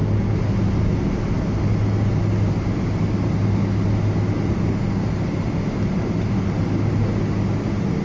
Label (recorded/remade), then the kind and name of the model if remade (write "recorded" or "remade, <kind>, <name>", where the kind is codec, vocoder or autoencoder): recorded